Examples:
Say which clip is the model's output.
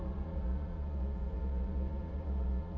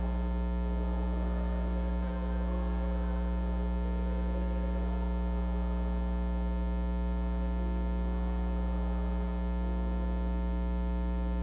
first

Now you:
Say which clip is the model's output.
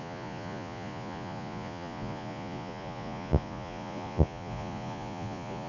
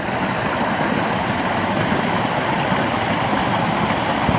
first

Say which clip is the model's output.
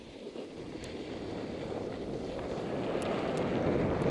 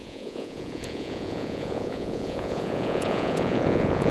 second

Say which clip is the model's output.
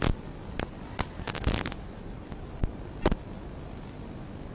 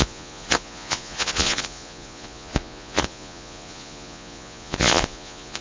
second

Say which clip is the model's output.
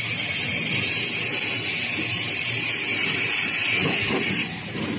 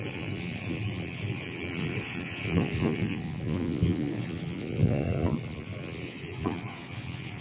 second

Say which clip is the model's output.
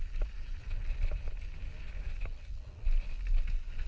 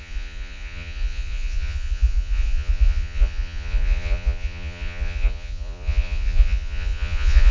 second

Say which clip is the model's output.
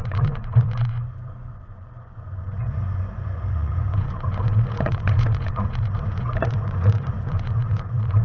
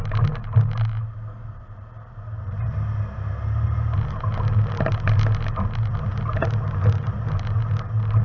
first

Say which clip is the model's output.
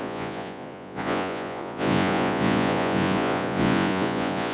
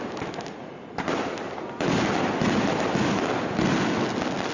first